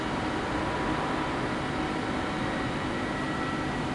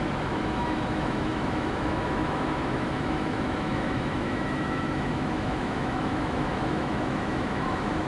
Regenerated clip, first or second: second